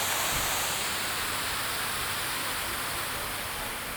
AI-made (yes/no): no